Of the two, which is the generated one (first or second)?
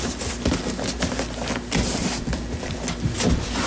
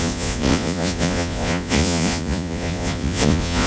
second